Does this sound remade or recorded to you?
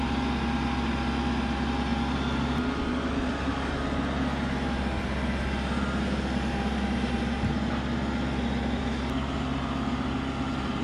recorded